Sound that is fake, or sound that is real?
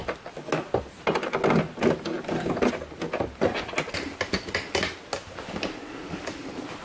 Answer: real